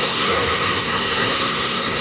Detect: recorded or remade remade